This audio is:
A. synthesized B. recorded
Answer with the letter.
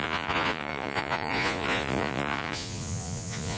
A